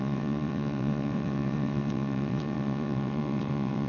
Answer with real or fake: fake